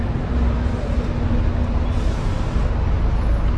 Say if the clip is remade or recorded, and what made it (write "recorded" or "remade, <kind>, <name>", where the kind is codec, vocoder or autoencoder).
recorded